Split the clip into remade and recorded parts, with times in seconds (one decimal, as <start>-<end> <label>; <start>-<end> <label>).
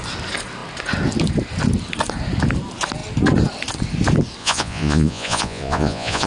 0.0-4.4 recorded; 4.4-6.3 remade